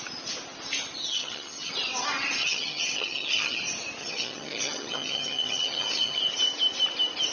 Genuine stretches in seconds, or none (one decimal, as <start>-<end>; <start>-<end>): 0.0-1.0; 1.7-2.4; 3.6-4.0; 6.2-7.3